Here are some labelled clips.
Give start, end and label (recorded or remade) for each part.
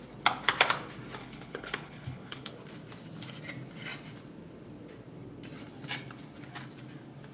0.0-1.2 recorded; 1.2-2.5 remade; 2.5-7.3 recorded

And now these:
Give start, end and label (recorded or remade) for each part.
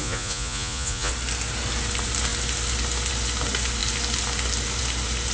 0.0-1.1 remade; 1.1-5.3 recorded